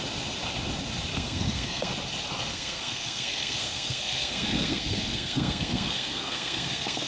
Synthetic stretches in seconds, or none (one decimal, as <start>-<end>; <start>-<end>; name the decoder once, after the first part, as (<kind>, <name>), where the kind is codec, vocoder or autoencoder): 1.1-1.9 (codec, SNAC); 2.5-7.1

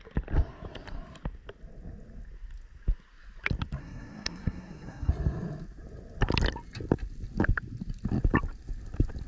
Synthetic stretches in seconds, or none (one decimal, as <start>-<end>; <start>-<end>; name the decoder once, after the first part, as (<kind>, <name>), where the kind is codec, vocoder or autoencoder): 3.8-5.1 (codec, SNAC)